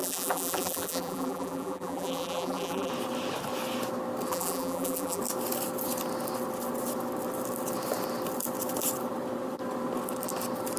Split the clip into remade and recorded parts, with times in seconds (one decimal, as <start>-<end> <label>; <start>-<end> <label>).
0.0-2.9 remade; 2.9-4.3 recorded; 4.3-5.2 remade; 5.2-10.8 recorded